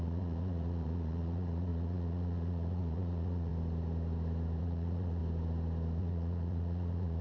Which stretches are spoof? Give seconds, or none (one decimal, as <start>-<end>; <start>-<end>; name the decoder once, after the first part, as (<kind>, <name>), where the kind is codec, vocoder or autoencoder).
0.0-3.5 (vocoder, Vocos); 4.6-5.2; 6.0-7.2